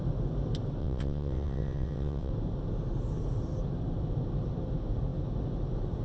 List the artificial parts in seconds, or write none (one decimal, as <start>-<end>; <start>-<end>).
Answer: 0.8-2.3